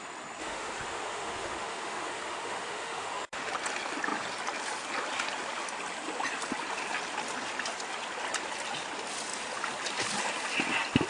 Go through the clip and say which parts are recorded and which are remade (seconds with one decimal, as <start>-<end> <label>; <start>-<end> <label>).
0.0-0.4 recorded; 0.4-3.5 remade; 3.5-11.1 recorded